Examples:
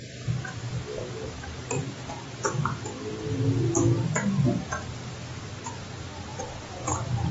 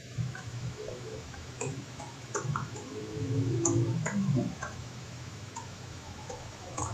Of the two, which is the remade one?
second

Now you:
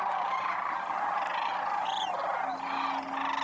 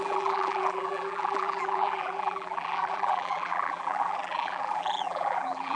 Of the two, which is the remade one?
second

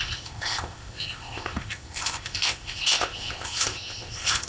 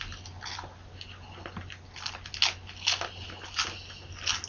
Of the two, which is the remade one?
first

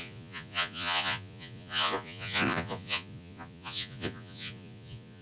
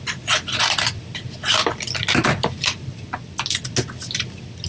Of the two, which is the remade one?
first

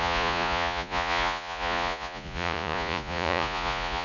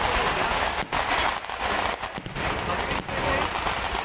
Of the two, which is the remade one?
first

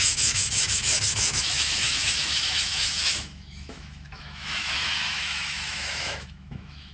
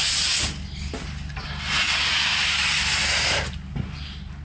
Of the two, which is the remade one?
first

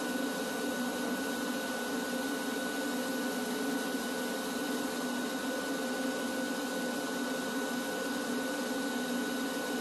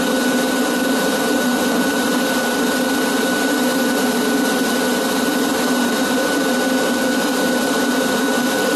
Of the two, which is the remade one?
second